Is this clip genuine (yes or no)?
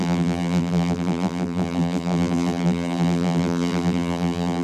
no